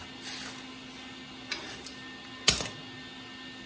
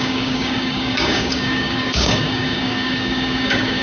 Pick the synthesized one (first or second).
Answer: second